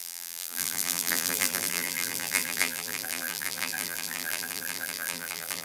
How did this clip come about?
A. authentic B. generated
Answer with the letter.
B